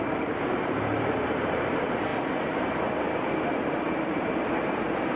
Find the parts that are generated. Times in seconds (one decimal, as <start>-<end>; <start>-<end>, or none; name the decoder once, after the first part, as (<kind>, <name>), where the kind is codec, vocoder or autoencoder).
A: none